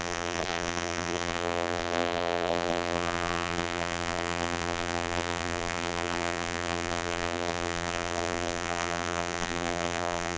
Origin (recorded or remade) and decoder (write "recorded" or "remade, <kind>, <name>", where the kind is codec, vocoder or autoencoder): remade, vocoder, BigVGAN v2